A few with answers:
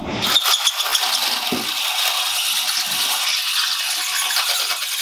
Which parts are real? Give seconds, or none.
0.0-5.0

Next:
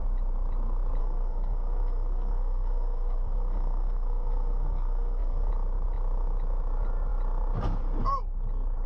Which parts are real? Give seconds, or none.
0.0-1.0; 5.5-8.9